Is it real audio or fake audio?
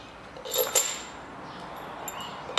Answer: real